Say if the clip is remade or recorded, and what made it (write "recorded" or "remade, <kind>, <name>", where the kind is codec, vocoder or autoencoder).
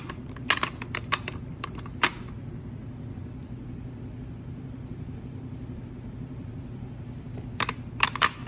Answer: remade, vocoder, BigVGAN v2